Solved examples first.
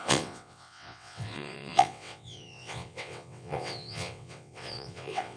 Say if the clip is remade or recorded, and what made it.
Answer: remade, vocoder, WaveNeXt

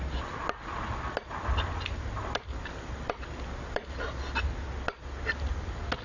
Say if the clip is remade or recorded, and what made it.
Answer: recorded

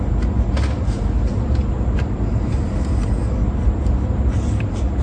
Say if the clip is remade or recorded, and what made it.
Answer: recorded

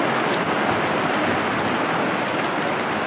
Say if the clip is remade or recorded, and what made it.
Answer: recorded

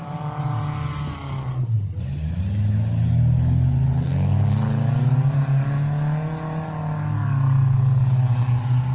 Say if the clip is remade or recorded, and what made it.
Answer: recorded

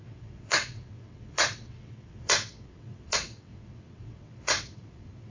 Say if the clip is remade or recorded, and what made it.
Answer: remade, vocoder, WaveNeXt